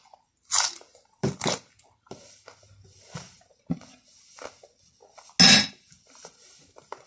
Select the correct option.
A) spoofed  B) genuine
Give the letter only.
B